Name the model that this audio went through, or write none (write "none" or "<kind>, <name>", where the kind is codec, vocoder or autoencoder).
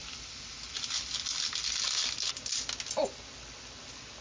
none